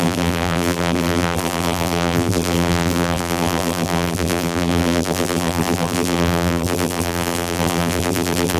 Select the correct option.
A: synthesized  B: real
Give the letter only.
A